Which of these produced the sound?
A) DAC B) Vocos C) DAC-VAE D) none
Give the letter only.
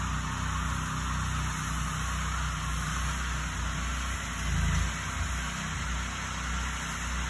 D